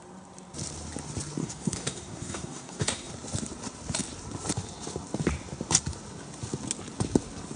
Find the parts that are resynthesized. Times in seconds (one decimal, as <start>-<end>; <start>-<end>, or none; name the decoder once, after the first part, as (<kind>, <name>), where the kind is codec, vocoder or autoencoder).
1.4-3.1 (codec, SNAC)